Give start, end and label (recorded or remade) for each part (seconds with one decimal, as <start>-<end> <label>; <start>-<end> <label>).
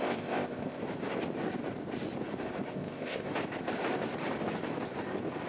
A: 0.0-0.8 remade; 0.8-2.7 recorded; 2.7-3.3 remade; 3.3-5.5 recorded